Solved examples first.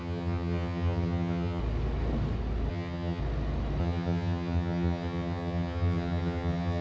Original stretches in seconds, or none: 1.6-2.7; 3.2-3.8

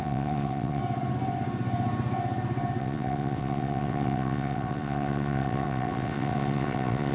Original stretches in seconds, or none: 0.8-2.8

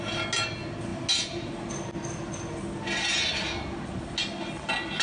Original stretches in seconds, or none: 0.0-5.0